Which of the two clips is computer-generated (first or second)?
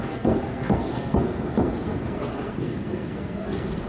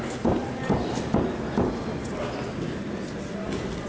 first